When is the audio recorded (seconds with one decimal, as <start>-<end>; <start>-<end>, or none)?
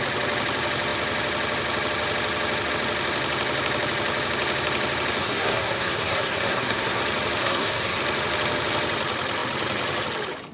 0.0-5.2; 7.0-7.4; 8.0-10.5